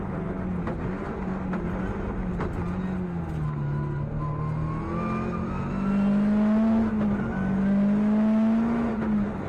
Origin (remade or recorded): recorded